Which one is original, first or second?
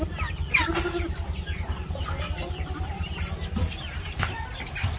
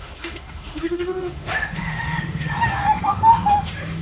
first